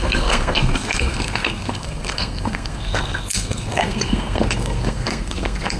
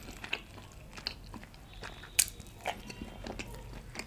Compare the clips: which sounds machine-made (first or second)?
first